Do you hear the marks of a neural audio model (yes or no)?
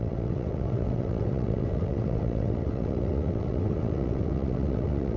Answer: yes